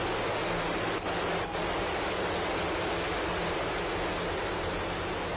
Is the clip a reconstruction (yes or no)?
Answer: no